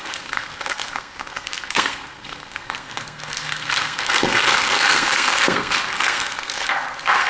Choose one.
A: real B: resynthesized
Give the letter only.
B